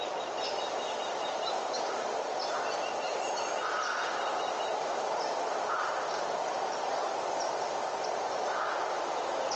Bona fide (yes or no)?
yes